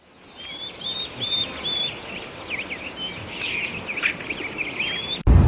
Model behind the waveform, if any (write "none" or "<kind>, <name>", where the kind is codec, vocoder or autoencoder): none